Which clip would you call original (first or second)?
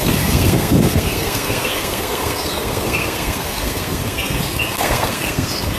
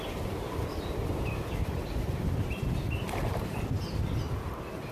second